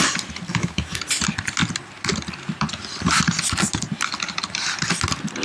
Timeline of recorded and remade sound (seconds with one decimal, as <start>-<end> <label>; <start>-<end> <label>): 0.0-0.5 recorded; 0.5-1.0 remade; 1.0-5.4 recorded

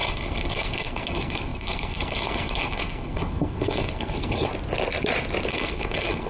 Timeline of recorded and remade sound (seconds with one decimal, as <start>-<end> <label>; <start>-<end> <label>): 0.0-4.5 remade; 4.5-5.5 recorded; 5.5-6.3 remade

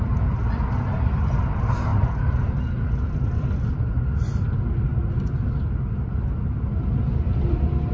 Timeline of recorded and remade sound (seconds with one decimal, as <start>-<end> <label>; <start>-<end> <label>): 0.0-7.9 recorded

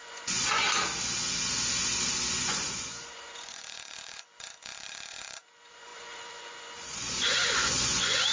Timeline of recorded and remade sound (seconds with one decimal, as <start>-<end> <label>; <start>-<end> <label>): 0.0-0.6 remade; 0.6-2.3 recorded; 2.3-8.3 remade

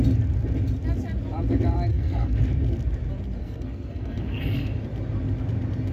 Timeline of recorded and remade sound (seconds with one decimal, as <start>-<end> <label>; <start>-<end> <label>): 0.0-1.9 recorded; 1.9-2.4 remade; 2.4-3.4 recorded; 3.4-4.4 remade; 4.4-5.9 recorded